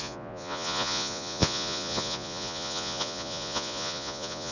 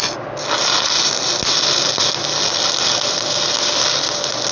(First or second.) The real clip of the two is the second